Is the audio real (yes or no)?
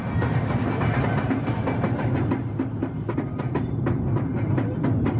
yes